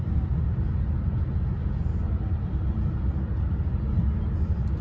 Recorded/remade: recorded